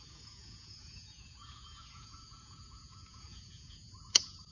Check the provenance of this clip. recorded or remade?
remade